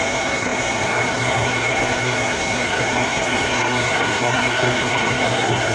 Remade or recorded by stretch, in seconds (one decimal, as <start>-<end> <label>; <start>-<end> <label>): 0.0-5.7 remade